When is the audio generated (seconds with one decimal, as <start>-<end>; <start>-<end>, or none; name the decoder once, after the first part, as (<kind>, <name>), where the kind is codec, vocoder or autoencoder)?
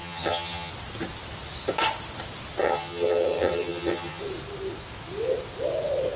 0.0-0.7 (vocoder, HiFi-GAN); 2.6-4.2